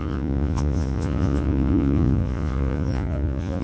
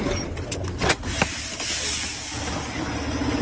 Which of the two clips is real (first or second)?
second